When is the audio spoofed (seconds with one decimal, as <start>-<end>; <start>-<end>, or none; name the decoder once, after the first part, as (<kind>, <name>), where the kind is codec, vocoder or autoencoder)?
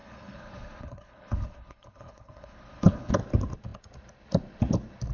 0.0-3.1 (codec, HILCodec)